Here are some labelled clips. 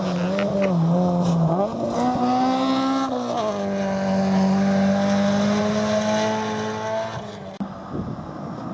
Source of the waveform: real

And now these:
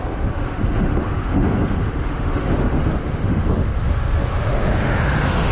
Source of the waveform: fake